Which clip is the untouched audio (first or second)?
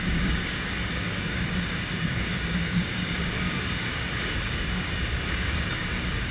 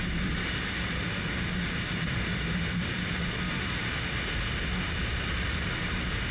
second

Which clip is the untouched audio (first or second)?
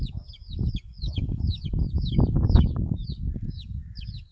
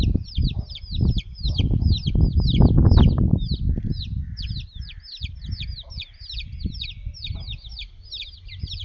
second